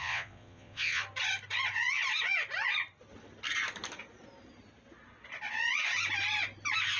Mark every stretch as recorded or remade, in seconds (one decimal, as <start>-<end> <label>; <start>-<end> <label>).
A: 0.0-1.0 remade; 1.0-7.0 recorded